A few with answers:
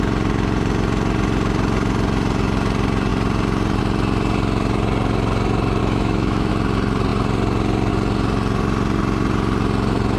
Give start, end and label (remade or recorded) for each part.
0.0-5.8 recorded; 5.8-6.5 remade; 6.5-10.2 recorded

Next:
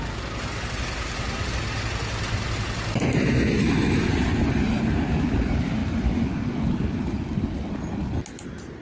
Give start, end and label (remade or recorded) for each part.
0.0-3.6 recorded; 3.6-4.1 remade; 4.1-8.8 recorded

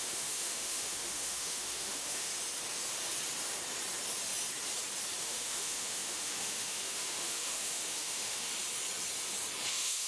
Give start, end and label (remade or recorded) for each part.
0.0-2.3 remade; 2.3-5.2 recorded; 5.2-8.5 remade; 8.5-9.7 recorded; 9.7-10.1 remade

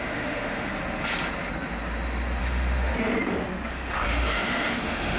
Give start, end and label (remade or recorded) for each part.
0.0-0.7 remade; 0.7-2.4 recorded; 2.4-2.9 remade; 2.9-3.7 recorded; 3.7-5.2 remade

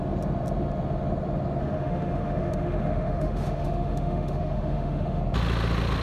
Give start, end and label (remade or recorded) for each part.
0.0-1.6 recorded; 1.6-5.2 remade; 5.2-6.0 recorded